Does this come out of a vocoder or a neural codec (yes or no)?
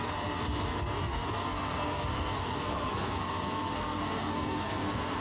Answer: yes